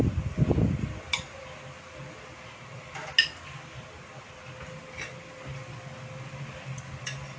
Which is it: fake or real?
real